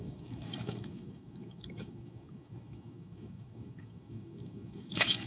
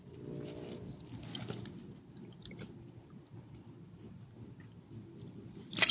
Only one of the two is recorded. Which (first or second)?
second